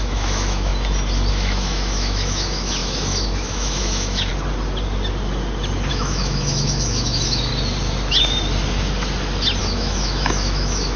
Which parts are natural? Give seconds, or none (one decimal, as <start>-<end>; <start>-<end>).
0.7-1.3; 4.3-5.9; 7.5-9.6